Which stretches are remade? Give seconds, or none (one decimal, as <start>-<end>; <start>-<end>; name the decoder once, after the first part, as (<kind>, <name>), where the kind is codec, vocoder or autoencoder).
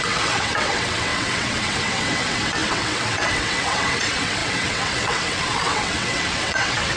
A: 0.0-7.0 (vocoder, WaveNeXt)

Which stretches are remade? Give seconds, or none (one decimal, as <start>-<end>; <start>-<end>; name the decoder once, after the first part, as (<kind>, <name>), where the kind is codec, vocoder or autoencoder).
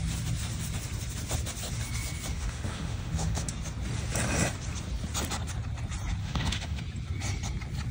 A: 2.3-3.5 (autoencoder, DAC-VAE); 6.2-6.8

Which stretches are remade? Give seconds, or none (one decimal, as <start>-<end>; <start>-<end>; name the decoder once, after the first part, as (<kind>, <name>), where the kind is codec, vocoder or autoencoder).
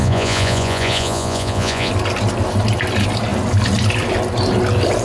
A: 0.0-1.9 (vocoder, Vocos)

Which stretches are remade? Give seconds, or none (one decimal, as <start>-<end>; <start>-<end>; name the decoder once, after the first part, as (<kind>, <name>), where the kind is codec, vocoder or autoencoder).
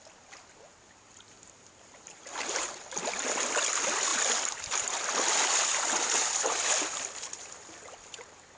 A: 0.7-2.8 (vocoder, BigVGAN v2)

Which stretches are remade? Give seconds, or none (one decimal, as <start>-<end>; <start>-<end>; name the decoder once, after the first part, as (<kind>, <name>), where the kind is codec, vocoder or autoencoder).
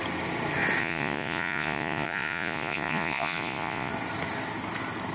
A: 0.8-3.9 (vocoder, Vocos)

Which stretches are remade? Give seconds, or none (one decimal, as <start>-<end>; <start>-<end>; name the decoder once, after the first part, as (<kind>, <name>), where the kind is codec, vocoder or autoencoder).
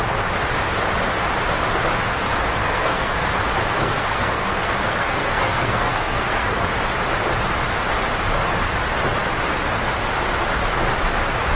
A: 2.6-3.3 (codec, SNAC); 3.8-6.7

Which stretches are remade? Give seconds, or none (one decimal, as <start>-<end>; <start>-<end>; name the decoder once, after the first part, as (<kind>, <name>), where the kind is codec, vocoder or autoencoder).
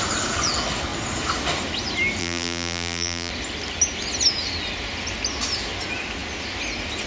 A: 2.2-3.3 (vocoder, BigVGAN v2)